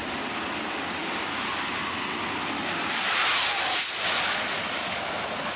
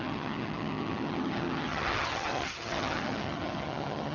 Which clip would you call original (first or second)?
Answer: first